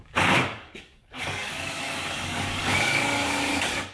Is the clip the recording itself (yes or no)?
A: no